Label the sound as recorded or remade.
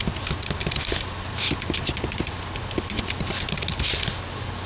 recorded